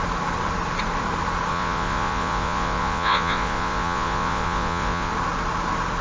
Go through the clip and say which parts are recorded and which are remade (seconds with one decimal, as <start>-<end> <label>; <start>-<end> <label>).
0.0-1.5 recorded; 1.5-5.1 remade; 5.1-6.0 recorded